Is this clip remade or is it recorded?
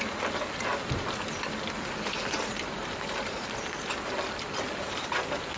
recorded